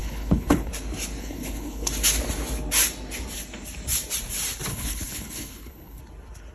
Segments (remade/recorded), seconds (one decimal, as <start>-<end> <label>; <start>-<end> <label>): 0.0-0.7 remade; 0.7-1.2 recorded; 1.2-1.9 remade; 1.9-4.7 recorded; 4.7-6.0 remade; 6.0-6.5 recorded